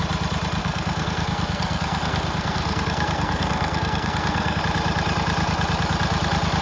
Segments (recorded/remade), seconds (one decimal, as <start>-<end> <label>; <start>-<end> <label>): 0.0-0.6 recorded; 0.6-4.6 remade; 4.6-6.6 recorded